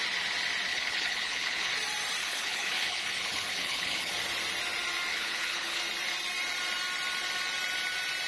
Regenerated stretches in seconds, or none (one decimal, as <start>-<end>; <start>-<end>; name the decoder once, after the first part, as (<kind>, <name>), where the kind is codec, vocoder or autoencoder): 0.7-1.7 (codec, HILCodec); 2.2-4.1; 5.1-5.8